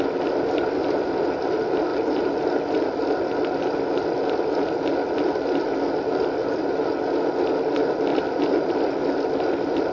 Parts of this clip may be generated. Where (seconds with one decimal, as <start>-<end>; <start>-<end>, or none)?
none